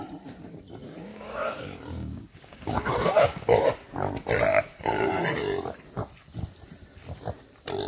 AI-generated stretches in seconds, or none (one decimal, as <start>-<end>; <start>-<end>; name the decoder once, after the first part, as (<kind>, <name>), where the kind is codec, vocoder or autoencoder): 1.1-3.6 (codec, DAC); 4.5-5.2